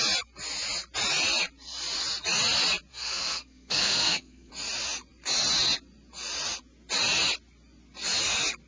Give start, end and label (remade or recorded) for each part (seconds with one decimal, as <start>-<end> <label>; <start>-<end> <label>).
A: 0.0-2.9 recorded; 2.9-4.5 remade; 4.5-8.7 recorded